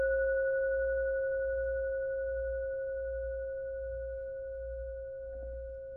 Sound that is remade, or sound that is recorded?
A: recorded